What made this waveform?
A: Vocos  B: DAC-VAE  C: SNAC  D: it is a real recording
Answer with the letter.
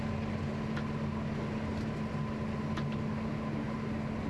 D